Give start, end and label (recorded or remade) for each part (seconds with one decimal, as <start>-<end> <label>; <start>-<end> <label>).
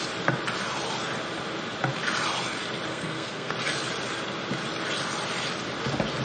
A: 0.0-2.9 recorded; 2.9-3.5 remade; 3.5-6.2 recorded